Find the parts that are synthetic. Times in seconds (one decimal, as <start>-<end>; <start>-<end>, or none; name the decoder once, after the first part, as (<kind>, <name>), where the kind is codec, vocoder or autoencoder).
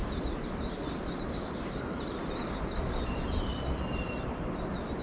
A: none